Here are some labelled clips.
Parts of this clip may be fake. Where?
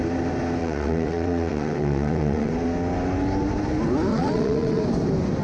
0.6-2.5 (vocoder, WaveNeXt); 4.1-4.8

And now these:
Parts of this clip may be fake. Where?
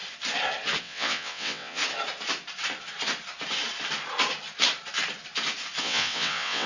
0.8-1.8 (vocoder, WaveNeXt); 5.8-6.7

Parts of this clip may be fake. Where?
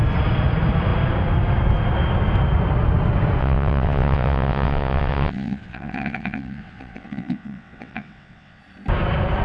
3.4-8.6 (vocoder, WaveNeXt)